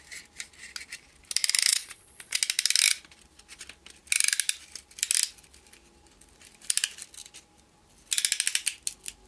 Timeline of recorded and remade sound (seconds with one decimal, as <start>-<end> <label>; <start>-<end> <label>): 0.0-1.7 recorded; 1.7-2.4 remade; 2.4-9.3 recorded